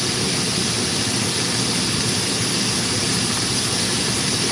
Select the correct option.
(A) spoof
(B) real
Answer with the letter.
B